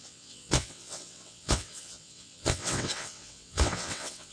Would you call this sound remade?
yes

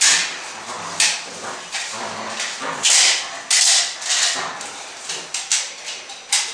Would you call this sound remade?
no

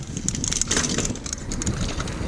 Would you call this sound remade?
no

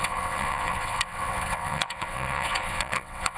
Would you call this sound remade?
yes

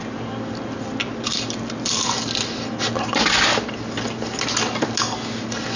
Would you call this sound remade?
no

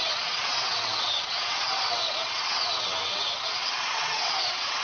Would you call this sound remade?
yes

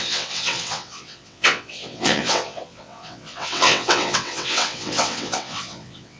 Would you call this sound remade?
yes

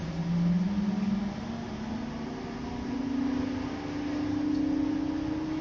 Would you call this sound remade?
no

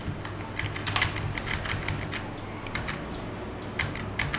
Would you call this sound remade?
no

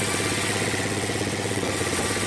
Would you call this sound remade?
yes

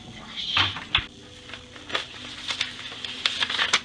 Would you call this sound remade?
no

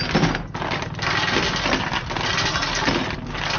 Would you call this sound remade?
no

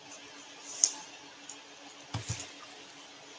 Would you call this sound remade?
no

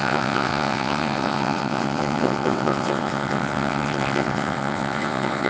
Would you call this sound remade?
yes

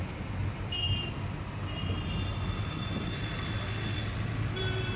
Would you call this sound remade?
no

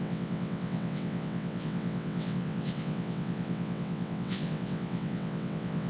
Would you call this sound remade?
yes